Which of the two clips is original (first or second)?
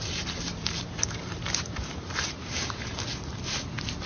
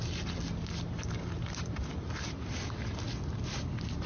second